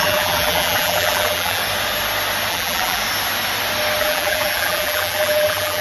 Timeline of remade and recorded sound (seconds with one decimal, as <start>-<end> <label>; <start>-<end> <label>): 0.0-1.6 remade; 1.6-2.5 recorded; 2.5-3.0 remade; 3.0-4.0 recorded; 4.0-5.8 remade